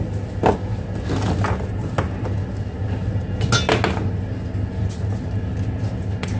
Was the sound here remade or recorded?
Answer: recorded